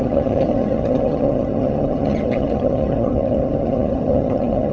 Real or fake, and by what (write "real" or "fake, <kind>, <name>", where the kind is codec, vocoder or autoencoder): fake, vocoder, HiFi-GAN